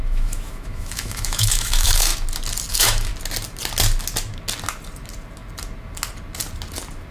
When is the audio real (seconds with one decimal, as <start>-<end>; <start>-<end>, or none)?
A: 2.1-2.7; 3.1-7.1